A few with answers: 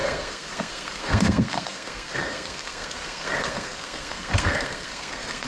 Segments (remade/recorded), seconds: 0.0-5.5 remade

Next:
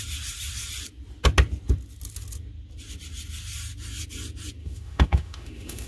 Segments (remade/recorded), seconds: 0.0-4.6 recorded; 4.6-5.9 remade

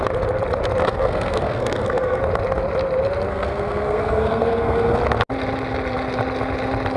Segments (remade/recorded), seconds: 0.0-0.8 recorded; 0.8-2.2 remade; 2.2-3.3 recorded; 3.3-5.0 remade; 5.0-7.0 recorded

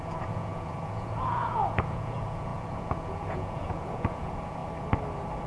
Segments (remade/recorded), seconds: 0.0-4.6 remade; 4.6-5.5 recorded

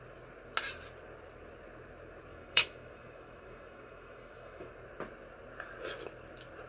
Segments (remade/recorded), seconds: 0.0-2.3 recorded; 2.3-4.7 remade; 4.7-6.7 recorded